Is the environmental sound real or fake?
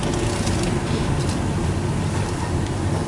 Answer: real